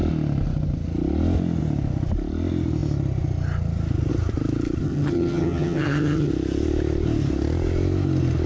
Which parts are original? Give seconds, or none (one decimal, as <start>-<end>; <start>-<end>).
0.0-4.8; 6.3-8.5